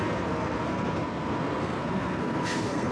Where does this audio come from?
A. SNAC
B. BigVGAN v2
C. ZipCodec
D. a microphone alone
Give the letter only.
A